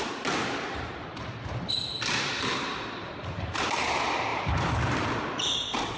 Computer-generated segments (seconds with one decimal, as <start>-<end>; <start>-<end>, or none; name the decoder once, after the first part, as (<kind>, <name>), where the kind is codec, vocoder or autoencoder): 2.5-3.9 (vocoder, BigVGAN v2); 4.3-4.9